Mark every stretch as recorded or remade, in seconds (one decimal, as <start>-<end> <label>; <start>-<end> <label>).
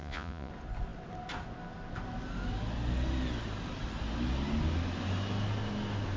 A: 0.0-0.5 remade; 0.5-6.2 recorded